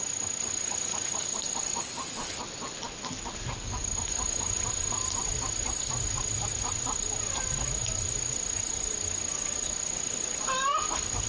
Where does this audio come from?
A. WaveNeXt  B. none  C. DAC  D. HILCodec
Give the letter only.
B